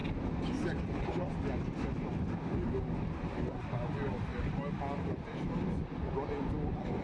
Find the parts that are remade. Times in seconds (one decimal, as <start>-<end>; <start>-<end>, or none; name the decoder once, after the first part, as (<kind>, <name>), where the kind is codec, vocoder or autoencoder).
none